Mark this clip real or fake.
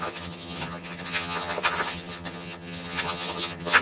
fake